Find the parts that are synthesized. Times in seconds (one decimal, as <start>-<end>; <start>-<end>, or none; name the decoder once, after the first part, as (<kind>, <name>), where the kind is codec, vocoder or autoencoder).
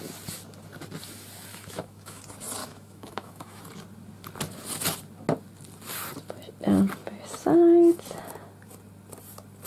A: 1.5-2.2 (autoencoder, DAC-VAE); 2.6-3.6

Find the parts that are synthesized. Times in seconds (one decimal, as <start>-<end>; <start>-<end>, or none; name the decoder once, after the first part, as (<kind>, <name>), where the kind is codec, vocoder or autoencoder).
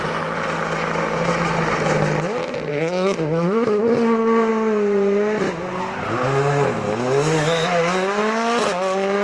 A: 2.7-3.8 (autoencoder, DAC-VAE)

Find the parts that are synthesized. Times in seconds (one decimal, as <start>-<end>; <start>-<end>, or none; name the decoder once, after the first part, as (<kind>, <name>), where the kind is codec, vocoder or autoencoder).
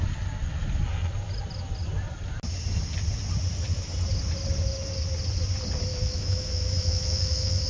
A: 5.9-7.7 (autoencoder, DAC-VAE)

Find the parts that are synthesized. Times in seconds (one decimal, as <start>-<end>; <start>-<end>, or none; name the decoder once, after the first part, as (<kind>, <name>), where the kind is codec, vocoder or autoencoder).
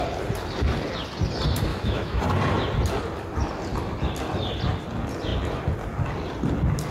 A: 1.7-2.2 (autoencoder, DAC-VAE)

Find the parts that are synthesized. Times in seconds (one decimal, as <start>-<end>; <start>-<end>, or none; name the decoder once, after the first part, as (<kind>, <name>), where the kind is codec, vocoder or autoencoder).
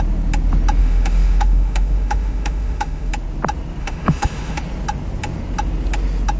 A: 0.8-3.1 (autoencoder, DAC-VAE); 3.8-4.6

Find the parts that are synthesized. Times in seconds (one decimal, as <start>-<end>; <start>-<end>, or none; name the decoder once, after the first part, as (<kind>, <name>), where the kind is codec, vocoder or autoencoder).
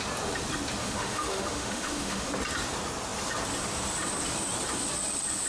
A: 0.8-2.3 (autoencoder, DAC-VAE)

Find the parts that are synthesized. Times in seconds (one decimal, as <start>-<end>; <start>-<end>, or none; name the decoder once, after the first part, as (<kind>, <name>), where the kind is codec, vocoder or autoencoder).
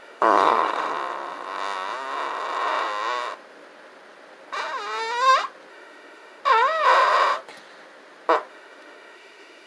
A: 0.0-0.9 (autoencoder, DAC-VAE); 5.7-6.4; 8.5-9.7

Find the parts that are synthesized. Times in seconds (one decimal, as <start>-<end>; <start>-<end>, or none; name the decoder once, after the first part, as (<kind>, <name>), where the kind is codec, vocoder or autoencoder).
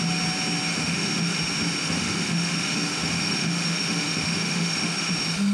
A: 0.7-1.4 (autoencoder, DAC-VAE); 1.8-5.1